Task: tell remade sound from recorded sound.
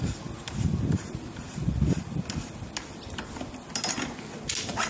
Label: recorded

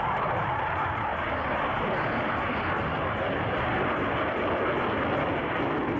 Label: recorded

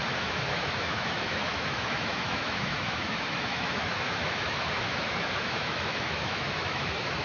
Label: remade